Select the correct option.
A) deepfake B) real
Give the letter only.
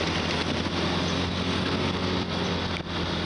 B